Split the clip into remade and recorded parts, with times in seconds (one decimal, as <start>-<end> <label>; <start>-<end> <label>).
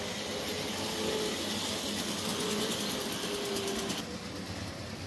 0.0-2.3 recorded; 2.3-2.8 remade; 2.8-5.1 recorded